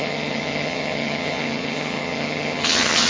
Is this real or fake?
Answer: fake